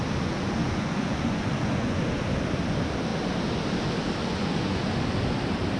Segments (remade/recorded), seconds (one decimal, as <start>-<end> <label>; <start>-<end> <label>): 0.0-0.6 recorded; 0.6-2.0 remade; 2.0-4.2 recorded; 4.2-4.8 remade; 4.8-5.8 recorded